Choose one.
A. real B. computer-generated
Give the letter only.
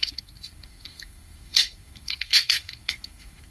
B